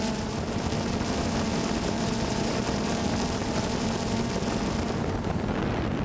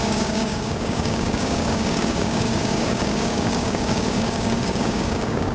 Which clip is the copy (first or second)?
second